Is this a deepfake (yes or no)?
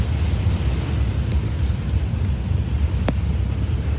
no